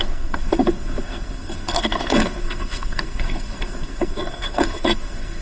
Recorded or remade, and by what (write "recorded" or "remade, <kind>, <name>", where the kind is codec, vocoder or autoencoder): remade, codec, SNAC